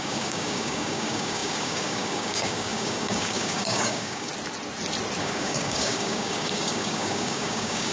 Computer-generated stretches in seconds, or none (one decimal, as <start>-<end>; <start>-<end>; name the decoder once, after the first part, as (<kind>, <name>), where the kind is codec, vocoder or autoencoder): 0.0-4.3 (codec, DAC); 5.2-7.9